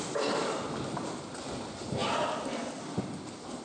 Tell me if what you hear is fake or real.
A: real